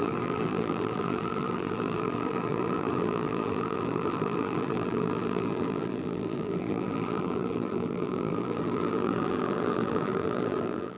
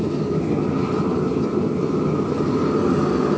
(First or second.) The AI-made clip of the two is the first